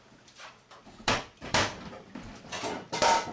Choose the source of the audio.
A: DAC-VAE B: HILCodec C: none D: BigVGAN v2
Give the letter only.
D